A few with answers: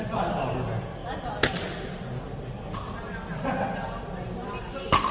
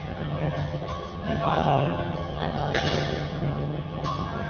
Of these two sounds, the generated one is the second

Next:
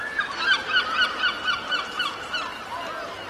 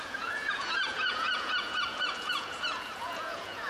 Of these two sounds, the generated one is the second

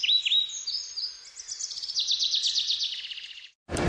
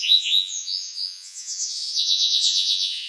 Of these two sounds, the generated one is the second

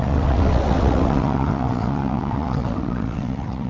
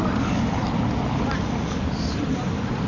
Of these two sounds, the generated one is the first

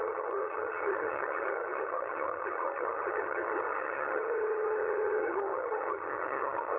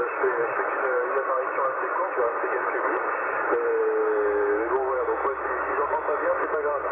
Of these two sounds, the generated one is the first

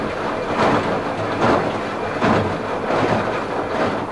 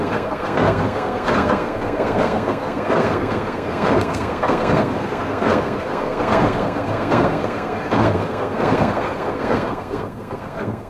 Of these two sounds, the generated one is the second